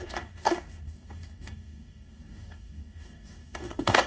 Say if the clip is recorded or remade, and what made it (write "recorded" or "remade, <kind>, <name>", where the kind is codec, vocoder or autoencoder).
remade, codec, DAC